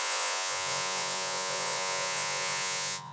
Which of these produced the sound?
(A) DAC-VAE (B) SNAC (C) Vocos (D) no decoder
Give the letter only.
C